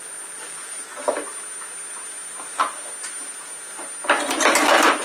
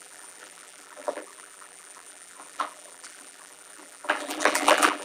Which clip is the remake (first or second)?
second